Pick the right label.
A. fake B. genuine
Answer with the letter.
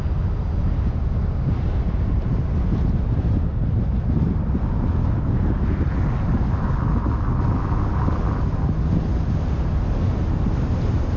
B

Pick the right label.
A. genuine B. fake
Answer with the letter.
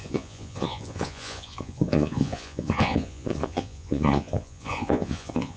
B